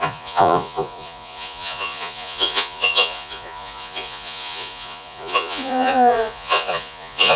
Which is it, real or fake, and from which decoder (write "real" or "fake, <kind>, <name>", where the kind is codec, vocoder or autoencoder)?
fake, vocoder, Vocos